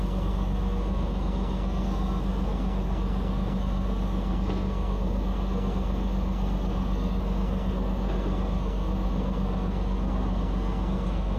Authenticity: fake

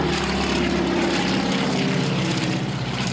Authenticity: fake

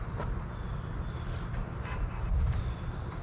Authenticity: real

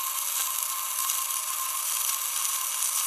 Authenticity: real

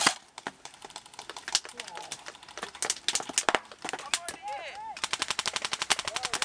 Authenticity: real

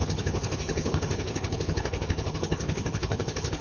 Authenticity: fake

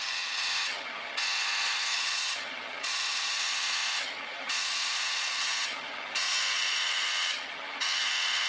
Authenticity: fake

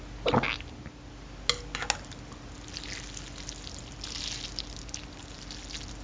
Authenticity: real